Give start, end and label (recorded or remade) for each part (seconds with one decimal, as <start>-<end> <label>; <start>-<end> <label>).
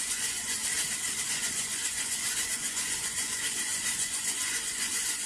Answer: 0.0-0.6 remade; 0.6-1.2 recorded; 1.2-5.3 remade